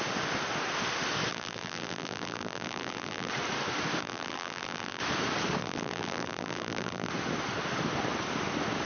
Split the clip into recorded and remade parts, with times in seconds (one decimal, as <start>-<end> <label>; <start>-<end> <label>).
0.0-1.3 recorded; 1.3-3.3 remade; 3.3-4.0 recorded; 4.0-5.0 remade; 5.0-5.6 recorded; 5.6-7.1 remade; 7.1-8.9 recorded